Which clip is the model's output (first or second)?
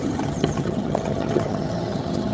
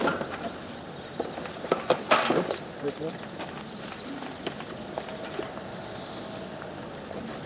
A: first